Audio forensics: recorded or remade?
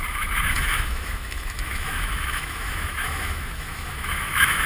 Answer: remade